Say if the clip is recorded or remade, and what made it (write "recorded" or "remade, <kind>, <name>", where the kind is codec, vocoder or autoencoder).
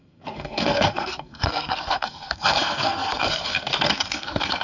remade, codec, SNAC